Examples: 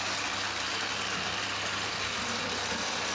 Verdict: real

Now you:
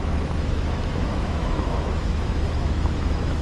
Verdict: fake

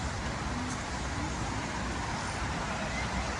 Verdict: real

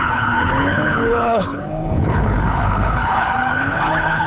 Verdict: fake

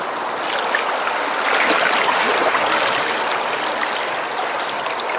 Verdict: real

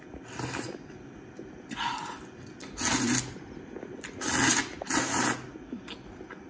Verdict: real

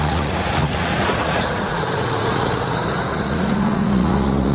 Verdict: fake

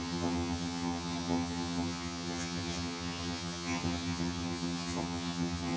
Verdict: fake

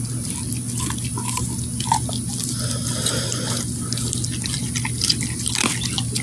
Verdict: real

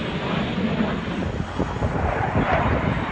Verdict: real